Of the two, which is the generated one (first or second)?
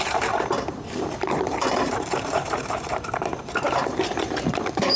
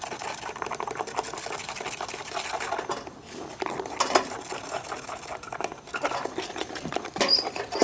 first